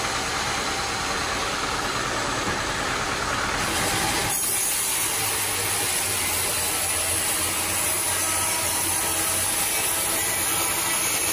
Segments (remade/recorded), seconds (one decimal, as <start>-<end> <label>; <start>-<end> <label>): 0.0-11.3 recorded